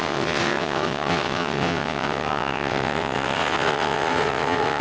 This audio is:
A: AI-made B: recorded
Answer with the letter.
A